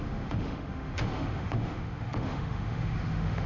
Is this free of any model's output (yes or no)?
no